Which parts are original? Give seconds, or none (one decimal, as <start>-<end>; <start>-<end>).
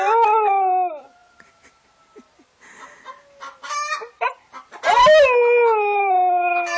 0.0-6.8